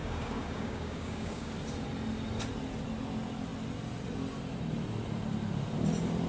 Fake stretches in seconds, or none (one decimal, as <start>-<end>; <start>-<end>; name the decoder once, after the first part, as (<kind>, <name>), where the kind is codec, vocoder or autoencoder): 0.0-1.5 (codec, DAC)